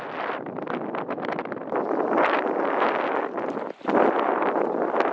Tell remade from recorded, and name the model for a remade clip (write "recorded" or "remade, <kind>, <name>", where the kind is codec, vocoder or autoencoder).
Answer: recorded